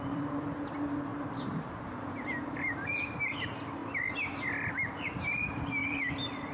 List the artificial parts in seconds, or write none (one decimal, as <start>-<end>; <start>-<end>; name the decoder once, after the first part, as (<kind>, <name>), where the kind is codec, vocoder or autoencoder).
0.0-3.8 (vocoder, BigVGAN v2); 4.7-6.5